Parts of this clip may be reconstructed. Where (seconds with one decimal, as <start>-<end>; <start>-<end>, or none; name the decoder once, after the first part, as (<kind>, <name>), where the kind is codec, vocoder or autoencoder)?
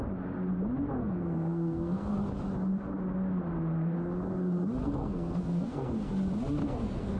1.0-2.2 (codec, SNAC); 4.8-6.1; 6.6-7.2